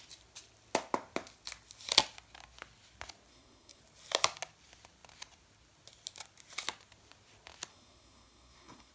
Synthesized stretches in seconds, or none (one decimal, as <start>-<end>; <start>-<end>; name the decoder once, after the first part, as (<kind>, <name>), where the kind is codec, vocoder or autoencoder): 3.3-3.8 (codec, SNAC); 7.7-8.9